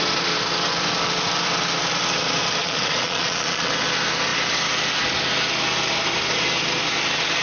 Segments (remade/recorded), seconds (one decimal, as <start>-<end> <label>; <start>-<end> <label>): 0.0-2.6 recorded; 2.6-3.7 remade; 3.7-7.4 recorded